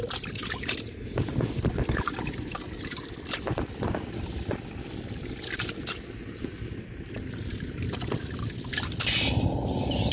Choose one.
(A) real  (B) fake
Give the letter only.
A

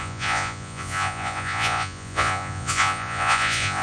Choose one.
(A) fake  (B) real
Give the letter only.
A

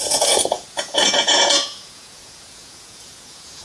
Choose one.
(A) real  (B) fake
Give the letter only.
B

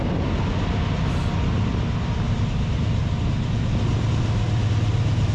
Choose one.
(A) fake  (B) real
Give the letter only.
B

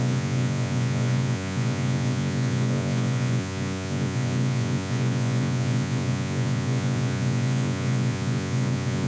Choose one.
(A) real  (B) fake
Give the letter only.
B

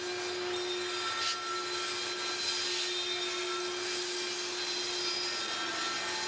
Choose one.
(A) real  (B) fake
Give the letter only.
A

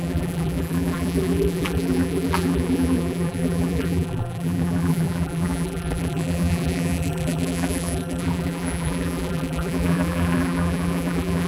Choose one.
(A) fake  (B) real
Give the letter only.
A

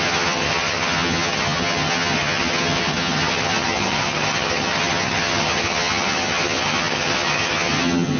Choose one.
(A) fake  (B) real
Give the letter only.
A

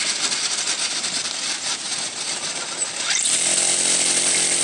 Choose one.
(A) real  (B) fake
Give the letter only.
B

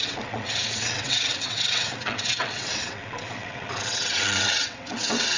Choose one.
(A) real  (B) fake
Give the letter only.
B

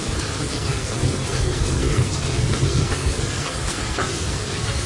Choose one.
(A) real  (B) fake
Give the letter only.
B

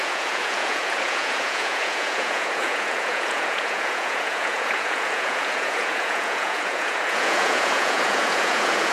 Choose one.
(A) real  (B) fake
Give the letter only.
B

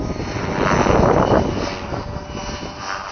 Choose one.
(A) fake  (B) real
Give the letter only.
B